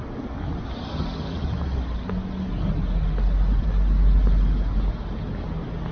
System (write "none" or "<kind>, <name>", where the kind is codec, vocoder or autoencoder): none